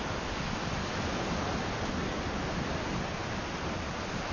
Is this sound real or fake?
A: real